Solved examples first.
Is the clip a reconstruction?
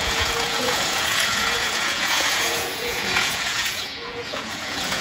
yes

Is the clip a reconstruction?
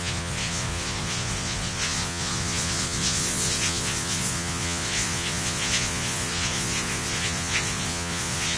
yes